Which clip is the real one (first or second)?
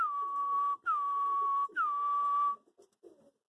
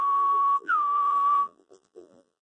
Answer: first